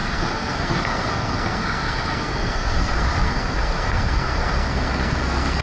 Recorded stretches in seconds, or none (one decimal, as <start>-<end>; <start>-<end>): none